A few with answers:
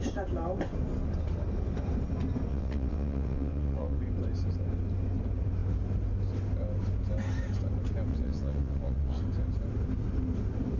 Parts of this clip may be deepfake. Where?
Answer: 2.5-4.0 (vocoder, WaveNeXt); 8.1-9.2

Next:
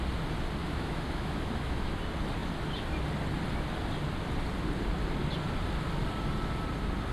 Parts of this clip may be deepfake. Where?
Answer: 0.6-2.0 (autoencoder, DAC-VAE)

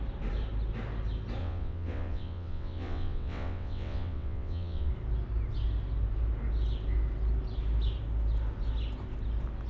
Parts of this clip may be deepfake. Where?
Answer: 1.4-4.9 (vocoder, WaveNeXt)